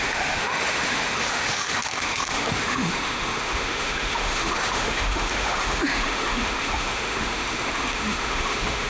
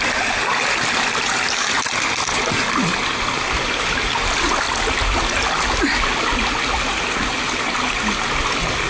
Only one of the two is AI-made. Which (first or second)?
first